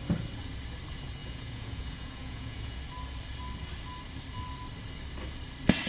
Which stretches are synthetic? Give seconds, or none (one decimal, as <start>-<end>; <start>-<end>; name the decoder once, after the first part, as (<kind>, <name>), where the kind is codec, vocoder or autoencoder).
1.2-2.8 (vocoder, Vocos)